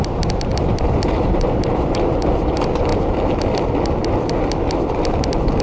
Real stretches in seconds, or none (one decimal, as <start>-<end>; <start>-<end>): 0.0-0.5; 2.4-5.6